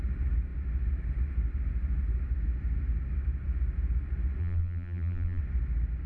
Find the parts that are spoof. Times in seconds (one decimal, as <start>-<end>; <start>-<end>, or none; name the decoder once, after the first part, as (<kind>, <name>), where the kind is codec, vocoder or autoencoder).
4.4-5.4 (vocoder, BigVGAN v2)